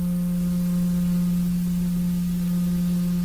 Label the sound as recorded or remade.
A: recorded